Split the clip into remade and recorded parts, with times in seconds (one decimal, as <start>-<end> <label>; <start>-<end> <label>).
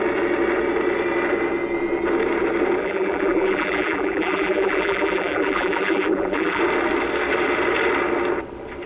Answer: 0.0-2.8 recorded; 2.8-6.6 remade; 6.6-8.9 recorded